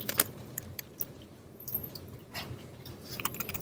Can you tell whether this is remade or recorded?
remade